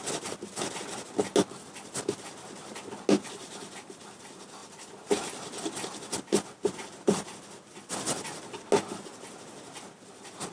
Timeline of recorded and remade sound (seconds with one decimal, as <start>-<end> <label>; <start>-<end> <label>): 0.0-10.5 recorded